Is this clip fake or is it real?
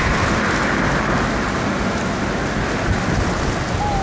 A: real